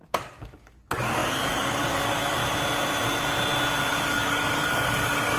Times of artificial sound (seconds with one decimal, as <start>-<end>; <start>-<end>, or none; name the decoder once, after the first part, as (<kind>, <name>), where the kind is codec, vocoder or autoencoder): 0.0-2.4 (codec, DAC); 3.9-5.4